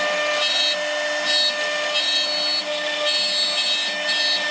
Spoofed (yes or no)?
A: no